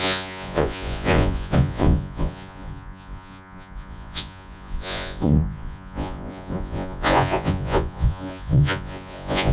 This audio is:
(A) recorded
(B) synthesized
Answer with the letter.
B